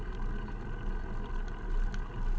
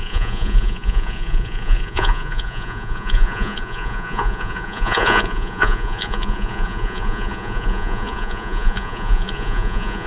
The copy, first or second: second